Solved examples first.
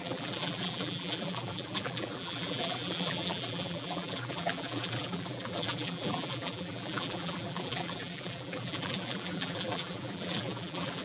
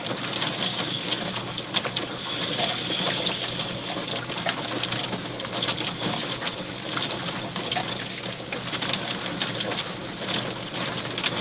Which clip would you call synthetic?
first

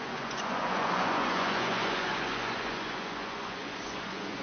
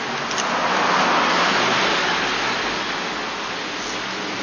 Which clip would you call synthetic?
first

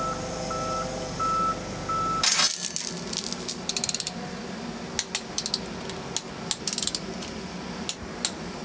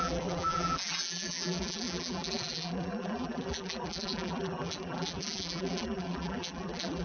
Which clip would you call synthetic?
second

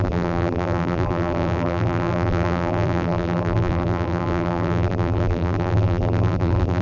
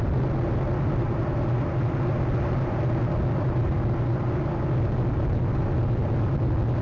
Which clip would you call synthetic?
first